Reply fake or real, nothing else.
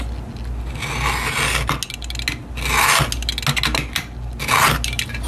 real